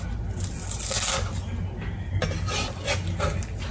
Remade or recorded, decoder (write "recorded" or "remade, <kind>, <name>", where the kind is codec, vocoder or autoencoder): recorded